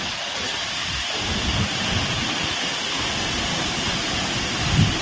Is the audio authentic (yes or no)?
yes